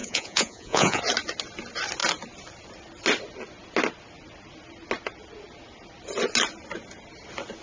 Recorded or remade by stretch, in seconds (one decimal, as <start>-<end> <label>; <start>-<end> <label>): 0.0-1.0 remade; 1.0-7.6 recorded